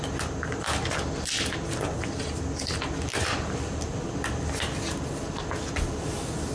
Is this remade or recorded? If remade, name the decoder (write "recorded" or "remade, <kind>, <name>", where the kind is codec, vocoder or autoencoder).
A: recorded